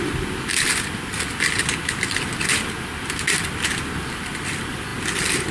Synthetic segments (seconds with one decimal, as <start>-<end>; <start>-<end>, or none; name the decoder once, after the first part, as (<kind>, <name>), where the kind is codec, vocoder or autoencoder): none